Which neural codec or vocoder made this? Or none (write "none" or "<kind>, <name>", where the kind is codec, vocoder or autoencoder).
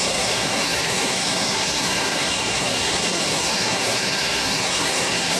codec, SNAC